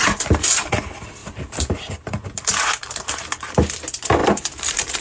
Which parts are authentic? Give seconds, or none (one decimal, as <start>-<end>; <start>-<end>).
0.0-1.2; 1.9-4.2